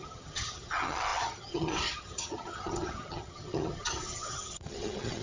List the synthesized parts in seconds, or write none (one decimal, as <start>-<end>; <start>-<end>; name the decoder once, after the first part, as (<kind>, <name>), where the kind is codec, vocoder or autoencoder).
0.0-5.2 (vocoder, HiFi-GAN)

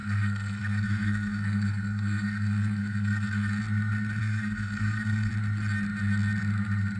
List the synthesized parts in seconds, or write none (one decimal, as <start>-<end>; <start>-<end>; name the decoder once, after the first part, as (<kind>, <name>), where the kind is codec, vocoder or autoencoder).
0.0-3.6 (codec, SNAC); 4.2-5.3

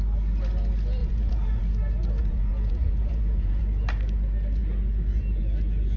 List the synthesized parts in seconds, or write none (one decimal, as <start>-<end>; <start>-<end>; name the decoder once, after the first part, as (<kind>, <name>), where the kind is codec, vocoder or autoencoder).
1.0-1.6 (vocoder, Vocos); 2.2-3.6

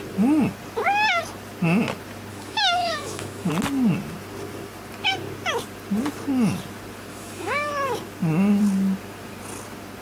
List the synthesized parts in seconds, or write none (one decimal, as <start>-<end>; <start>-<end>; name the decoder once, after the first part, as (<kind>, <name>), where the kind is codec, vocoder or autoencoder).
2.3-3.5 (autoencoder, DAC-VAE); 7.1-7.7

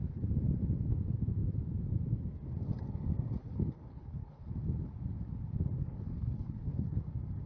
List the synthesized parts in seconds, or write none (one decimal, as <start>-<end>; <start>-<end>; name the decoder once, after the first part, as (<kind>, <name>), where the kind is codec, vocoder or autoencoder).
3.4-4.5 (codec, HILCodec); 5.8-7.0

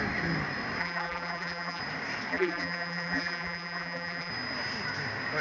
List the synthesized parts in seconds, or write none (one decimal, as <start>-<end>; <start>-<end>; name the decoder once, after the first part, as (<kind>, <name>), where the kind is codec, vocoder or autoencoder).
0.8-1.8 (vocoder, BigVGAN v2); 2.3-4.3

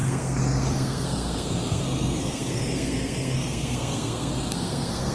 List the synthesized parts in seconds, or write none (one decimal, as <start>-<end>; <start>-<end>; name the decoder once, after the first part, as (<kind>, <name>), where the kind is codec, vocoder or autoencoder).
0.0-5.1 (codec, SNAC)

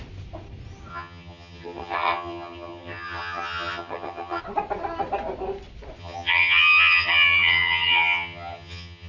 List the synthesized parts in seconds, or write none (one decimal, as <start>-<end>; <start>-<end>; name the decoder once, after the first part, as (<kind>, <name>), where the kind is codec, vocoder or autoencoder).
0.9-4.4 (vocoder, HiFi-GAN); 6.0-9.1